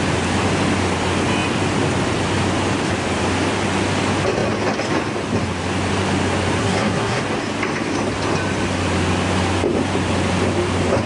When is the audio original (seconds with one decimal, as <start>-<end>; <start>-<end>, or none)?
0.0-6.6; 7.2-11.1